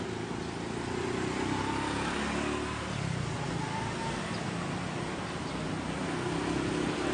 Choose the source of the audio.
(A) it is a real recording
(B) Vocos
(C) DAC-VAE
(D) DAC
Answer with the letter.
A